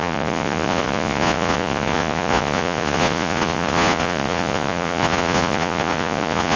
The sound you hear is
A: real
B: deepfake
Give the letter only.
B